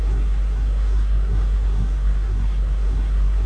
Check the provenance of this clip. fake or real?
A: fake